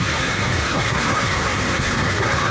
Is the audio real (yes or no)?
no